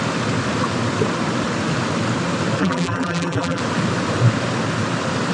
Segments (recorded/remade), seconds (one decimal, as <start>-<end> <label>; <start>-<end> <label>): 0.0-2.6 recorded; 2.6-3.6 remade; 3.6-5.3 recorded